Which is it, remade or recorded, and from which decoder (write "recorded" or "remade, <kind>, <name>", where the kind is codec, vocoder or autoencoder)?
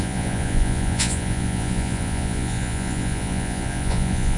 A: remade, vocoder, Vocos